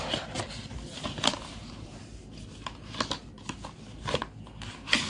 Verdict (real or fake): real